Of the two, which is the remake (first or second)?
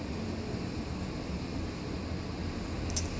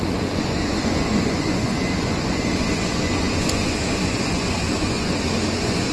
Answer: second